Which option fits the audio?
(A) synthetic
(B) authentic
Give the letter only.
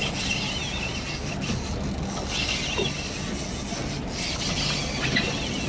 B